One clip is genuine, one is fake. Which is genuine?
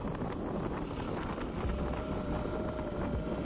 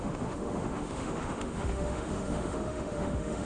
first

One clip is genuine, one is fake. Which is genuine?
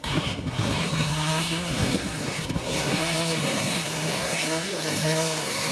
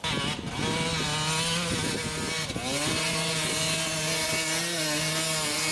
second